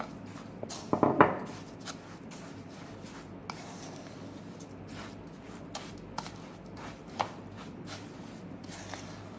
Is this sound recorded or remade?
recorded